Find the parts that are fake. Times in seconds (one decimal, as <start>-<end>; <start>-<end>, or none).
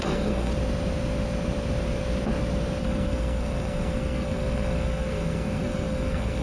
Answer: 0.0-0.5; 2.8-6.4